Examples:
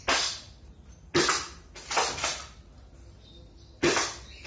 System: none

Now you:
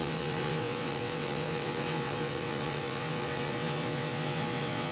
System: vocoder, WaveNeXt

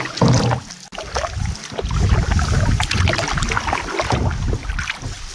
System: none